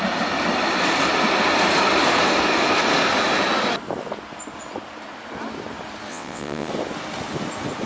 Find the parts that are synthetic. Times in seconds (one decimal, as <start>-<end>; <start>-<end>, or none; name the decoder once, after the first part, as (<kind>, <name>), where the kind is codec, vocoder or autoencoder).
6.1-6.7 (vocoder, WaveNeXt)